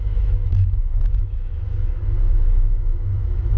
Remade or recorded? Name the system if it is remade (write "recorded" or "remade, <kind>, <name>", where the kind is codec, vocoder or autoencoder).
remade, autoencoder, DAC-VAE